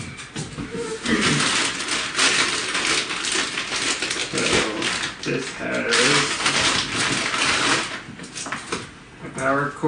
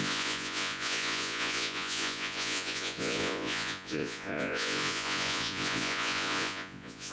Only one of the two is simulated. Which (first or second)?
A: second